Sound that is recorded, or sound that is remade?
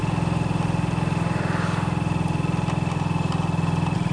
recorded